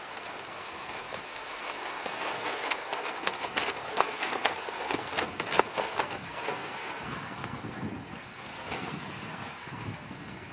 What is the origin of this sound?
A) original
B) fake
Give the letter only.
B